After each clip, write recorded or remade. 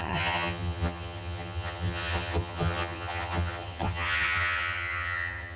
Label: remade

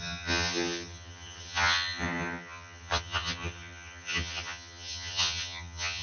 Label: remade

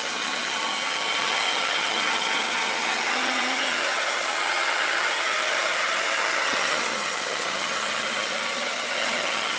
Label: remade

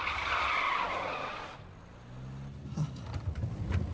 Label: recorded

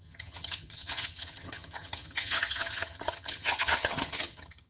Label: remade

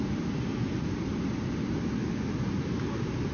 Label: recorded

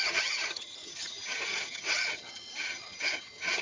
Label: remade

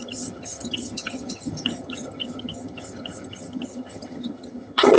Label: remade